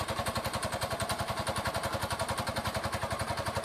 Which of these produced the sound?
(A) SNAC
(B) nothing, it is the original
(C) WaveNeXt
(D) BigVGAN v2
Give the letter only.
D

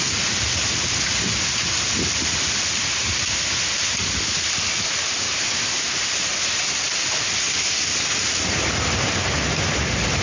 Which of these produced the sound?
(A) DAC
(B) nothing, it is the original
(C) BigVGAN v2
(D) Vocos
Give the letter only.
B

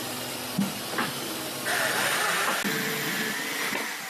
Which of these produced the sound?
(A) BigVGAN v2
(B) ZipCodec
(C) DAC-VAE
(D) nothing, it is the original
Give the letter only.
D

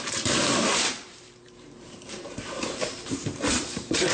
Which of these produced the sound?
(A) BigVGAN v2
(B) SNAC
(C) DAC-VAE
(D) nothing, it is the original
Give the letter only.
A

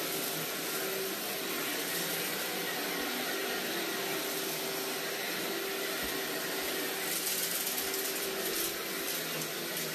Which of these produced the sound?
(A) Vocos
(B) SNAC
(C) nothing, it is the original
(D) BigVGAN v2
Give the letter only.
C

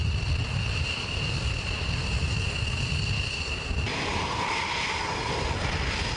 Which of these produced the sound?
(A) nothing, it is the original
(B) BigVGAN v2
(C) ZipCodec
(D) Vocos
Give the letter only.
A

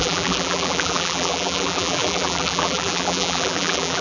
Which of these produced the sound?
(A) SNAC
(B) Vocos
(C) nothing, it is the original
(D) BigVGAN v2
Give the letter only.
D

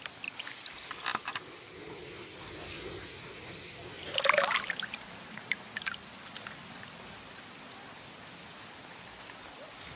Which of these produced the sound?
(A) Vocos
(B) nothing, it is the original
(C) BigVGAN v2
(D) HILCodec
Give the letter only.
B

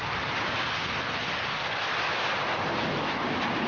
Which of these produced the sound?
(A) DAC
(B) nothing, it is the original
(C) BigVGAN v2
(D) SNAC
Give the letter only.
B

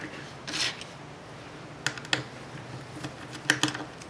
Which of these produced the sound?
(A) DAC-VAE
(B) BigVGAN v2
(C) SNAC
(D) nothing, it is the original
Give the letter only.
D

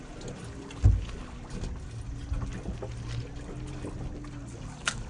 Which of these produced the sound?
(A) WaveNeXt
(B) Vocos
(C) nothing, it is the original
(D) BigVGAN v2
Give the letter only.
C